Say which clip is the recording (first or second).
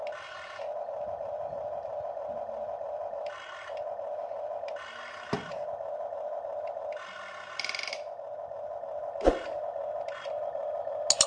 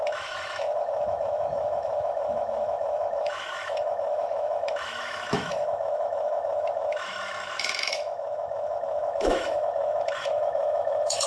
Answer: first